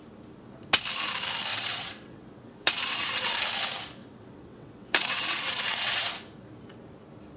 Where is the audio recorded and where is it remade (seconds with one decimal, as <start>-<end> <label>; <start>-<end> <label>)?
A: 0.0-1.5 recorded; 1.5-3.4 remade; 3.4-4.0 recorded; 4.0-6.1 remade; 6.1-7.4 recorded